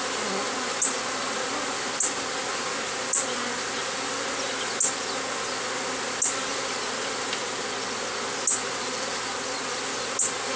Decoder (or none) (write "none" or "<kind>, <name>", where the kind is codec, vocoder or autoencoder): none